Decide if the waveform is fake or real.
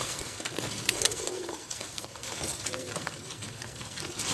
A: fake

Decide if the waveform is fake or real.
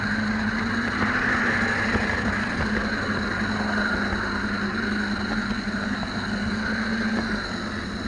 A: real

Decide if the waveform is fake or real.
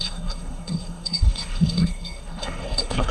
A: fake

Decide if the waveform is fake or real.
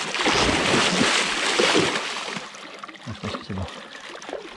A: real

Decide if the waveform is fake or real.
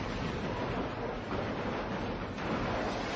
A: real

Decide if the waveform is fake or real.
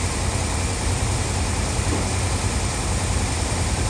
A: real